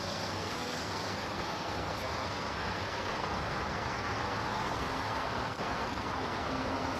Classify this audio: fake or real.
fake